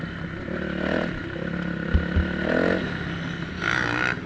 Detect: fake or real real